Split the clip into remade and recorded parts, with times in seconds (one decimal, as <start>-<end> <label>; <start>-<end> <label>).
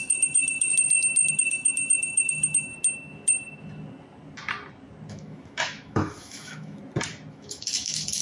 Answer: 0.0-0.7 remade; 0.7-1.3 recorded; 1.3-2.7 remade; 2.7-5.1 recorded; 5.1-6.8 remade; 6.8-7.3 recorded; 7.3-8.2 remade